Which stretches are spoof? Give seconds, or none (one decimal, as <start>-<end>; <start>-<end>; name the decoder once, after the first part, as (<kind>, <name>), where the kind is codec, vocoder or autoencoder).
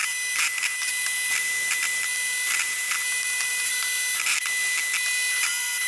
none